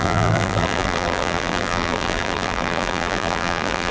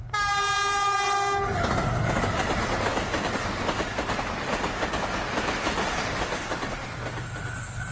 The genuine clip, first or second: second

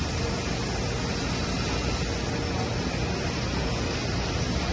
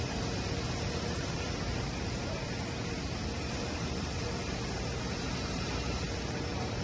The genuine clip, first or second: first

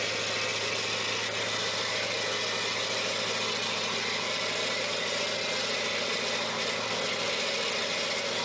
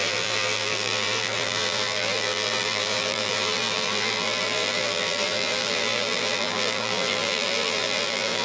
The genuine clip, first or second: first